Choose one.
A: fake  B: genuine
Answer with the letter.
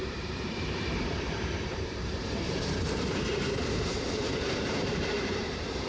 A